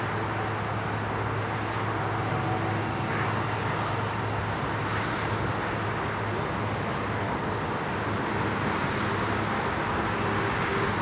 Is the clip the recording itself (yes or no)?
yes